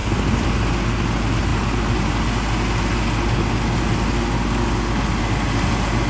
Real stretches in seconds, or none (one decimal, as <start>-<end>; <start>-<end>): 0.6-6.1